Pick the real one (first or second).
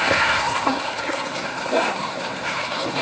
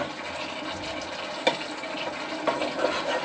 second